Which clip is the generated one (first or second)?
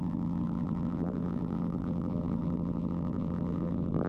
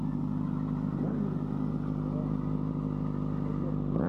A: first